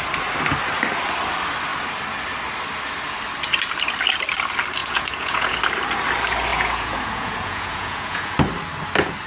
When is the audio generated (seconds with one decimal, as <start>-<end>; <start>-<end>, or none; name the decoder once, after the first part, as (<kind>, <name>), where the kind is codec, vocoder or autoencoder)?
4.8-5.6 (vocoder, Vocos); 6.5-8.3